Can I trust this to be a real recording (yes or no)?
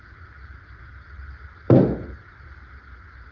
yes